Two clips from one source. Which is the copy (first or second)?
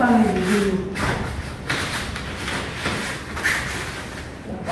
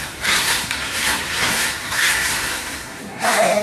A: second